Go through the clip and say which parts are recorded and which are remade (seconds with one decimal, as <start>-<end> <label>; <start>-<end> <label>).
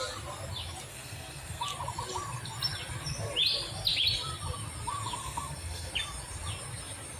0.0-0.9 recorded; 0.9-1.6 remade; 1.6-5.2 recorded; 5.2-5.9 remade; 5.9-7.2 recorded